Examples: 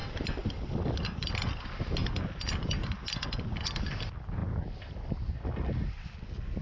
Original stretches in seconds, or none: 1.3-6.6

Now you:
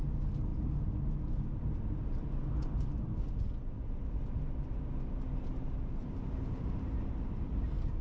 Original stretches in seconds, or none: 0.0-6.0; 6.7-8.0